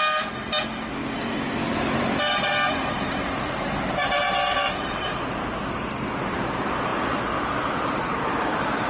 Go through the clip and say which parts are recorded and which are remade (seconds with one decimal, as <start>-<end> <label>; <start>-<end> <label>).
0.0-1.0 recorded; 1.0-5.2 remade; 5.2-8.9 recorded